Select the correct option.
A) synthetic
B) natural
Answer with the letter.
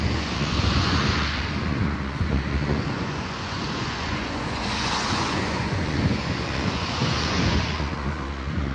A